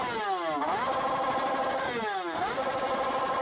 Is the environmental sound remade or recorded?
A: recorded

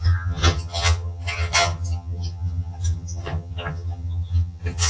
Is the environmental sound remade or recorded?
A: remade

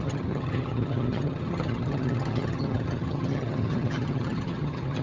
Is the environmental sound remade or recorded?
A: remade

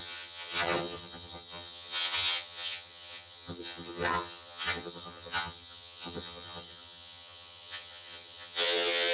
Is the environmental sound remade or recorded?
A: remade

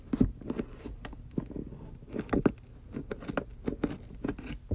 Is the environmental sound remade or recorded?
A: recorded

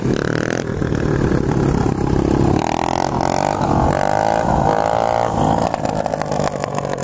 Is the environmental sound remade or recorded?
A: recorded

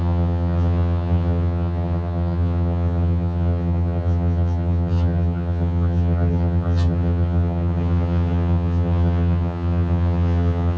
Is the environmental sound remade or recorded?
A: remade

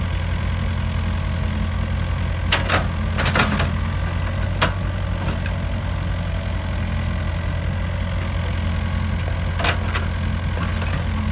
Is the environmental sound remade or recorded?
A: recorded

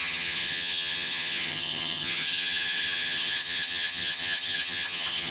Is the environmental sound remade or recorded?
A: remade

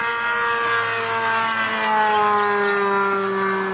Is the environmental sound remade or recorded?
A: recorded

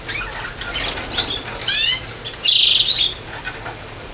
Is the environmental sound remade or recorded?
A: recorded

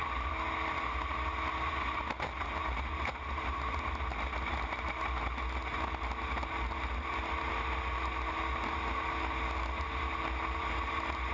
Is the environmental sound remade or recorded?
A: recorded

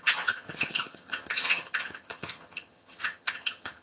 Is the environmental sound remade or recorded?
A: remade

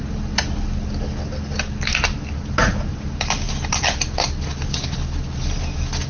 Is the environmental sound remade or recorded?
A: recorded